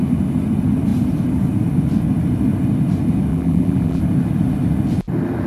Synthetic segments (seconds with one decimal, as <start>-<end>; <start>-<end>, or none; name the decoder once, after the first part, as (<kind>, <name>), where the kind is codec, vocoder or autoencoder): 3.3-4.0 (vocoder, BigVGAN v2)